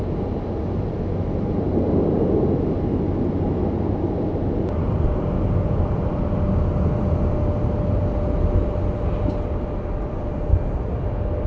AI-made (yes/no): no